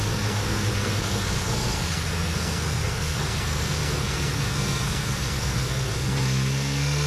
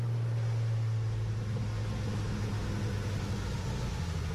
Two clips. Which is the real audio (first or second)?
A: second